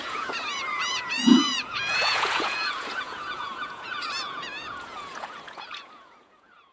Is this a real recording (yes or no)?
no